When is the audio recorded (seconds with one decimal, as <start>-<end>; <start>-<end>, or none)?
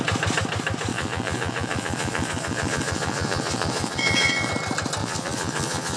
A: 0.0-0.9; 4.5-5.0